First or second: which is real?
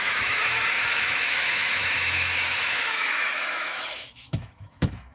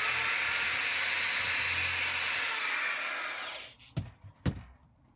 second